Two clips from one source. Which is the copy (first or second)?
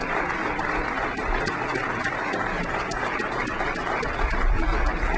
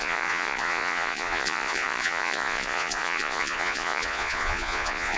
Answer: second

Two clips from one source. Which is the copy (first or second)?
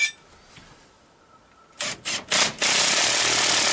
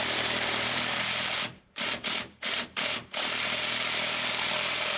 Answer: second